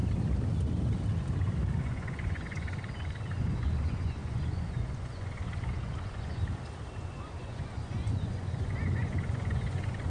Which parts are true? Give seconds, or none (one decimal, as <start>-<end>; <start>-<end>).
0.0-1.8; 6.4-7.0